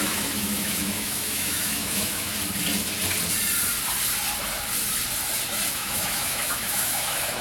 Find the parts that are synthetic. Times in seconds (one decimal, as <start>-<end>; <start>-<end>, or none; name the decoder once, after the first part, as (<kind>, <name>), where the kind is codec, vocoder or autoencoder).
0.0-2.3 (autoencoder, DAC-VAE); 5.7-7.4

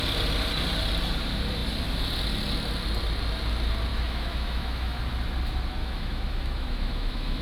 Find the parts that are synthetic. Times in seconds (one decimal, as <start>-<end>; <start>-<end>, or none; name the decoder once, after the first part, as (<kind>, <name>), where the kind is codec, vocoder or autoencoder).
3.9-5.0 (autoencoder, DAC-VAE); 5.8-7.4